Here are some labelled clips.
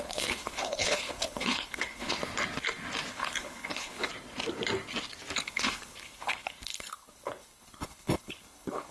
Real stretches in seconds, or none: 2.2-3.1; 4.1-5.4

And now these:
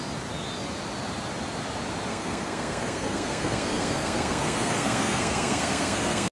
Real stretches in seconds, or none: 0.0-2.1

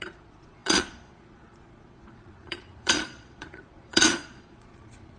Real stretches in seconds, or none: none

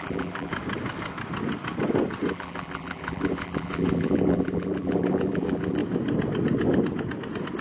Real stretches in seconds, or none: 0.5-2.3; 5.8-7.6

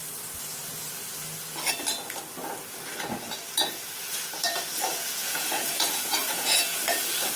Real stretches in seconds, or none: 0.0-4.9; 6.8-7.4

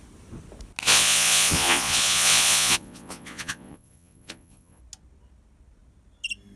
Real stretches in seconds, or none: 0.0-0.8; 4.8-6.6

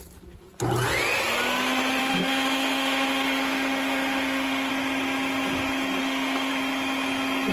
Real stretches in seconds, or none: 0.0-2.0; 4.7-6.0; 6.5-7.5